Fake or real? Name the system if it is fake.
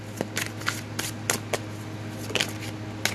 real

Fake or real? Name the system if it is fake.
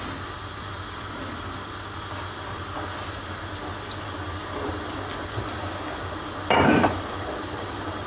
real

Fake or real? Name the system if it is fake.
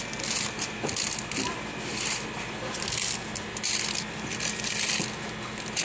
real